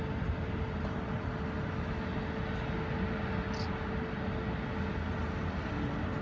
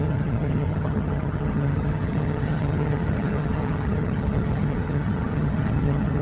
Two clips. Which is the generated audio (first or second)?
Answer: second